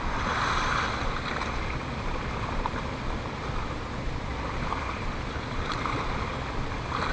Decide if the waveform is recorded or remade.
recorded